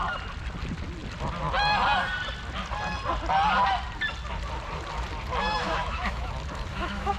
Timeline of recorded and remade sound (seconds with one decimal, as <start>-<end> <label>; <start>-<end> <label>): 0.0-5.4 recorded; 5.4-6.3 remade; 6.3-6.7 recorded; 6.7-7.2 remade